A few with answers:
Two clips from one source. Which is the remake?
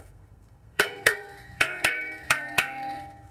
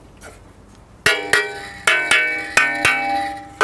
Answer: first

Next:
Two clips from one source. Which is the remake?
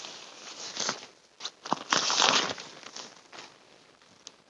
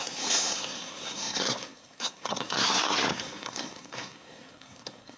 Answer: second